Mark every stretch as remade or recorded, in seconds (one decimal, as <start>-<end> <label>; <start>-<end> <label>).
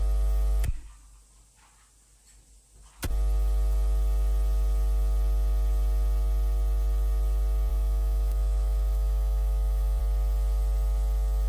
0.0-7.7 recorded; 7.7-10.0 remade; 10.0-11.5 recorded